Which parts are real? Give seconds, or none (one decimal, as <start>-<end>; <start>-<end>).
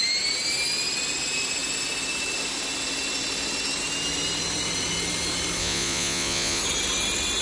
0.0-5.6; 6.6-7.4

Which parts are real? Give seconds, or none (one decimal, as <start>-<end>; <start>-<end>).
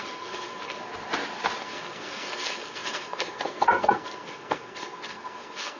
0.8-1.6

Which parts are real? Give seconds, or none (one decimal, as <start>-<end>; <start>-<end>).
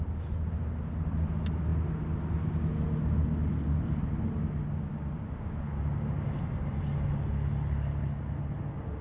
0.0-9.0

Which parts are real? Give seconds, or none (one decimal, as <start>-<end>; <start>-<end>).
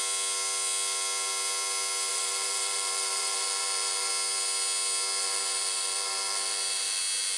0.0-2.1; 4.1-5.2; 7.0-7.4